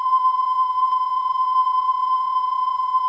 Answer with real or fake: fake